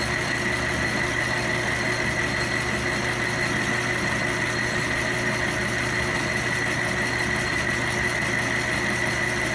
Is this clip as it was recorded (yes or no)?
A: yes